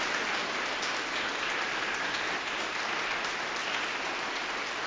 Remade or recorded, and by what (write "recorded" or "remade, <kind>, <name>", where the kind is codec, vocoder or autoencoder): recorded